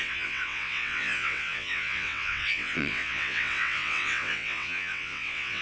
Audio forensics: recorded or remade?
remade